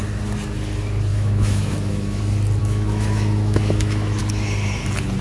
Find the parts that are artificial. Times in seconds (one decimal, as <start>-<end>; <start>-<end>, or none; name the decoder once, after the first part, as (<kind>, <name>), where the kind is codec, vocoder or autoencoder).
1.1-2.2 (autoencoder, DAC-VAE); 2.6-4.2